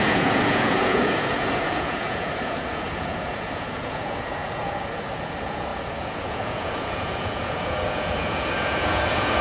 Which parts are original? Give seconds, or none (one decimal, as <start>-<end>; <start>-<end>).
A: none

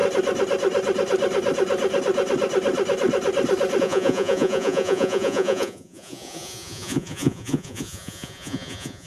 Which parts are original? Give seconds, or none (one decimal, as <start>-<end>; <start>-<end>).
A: 0.0-3.8

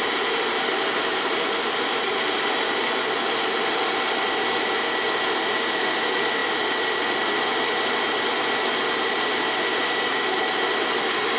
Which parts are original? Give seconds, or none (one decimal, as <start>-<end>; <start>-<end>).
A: 0.0-11.4

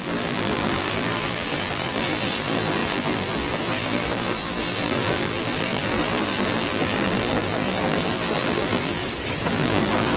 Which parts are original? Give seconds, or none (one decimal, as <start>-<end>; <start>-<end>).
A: 9.0-9.5

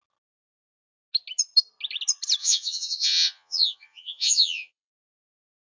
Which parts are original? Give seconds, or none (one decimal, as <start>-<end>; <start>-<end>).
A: 0.0-2.4; 4.9-5.6

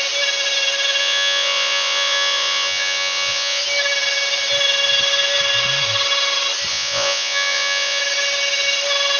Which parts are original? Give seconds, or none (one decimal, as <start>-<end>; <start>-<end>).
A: 0.0-1.0; 3.6-6.7; 8.0-9.2